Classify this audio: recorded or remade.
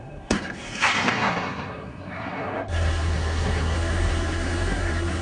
remade